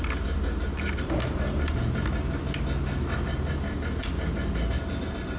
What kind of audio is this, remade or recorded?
recorded